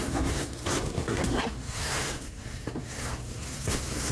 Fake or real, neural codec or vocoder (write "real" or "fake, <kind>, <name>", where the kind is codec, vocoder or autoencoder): fake, codec, SNAC